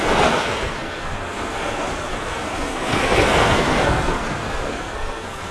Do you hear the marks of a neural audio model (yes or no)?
yes